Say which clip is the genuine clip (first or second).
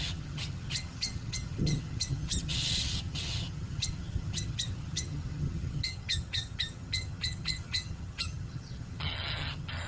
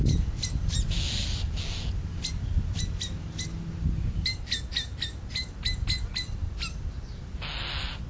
second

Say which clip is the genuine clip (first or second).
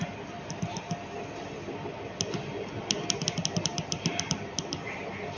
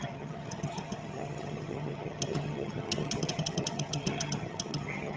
first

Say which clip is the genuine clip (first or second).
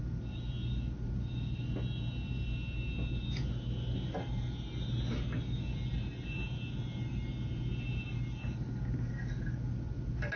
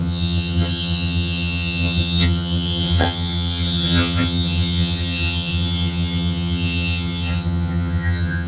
first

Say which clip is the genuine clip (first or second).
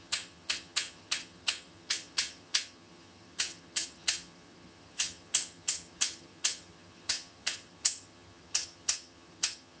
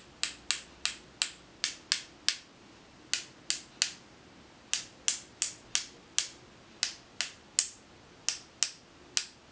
second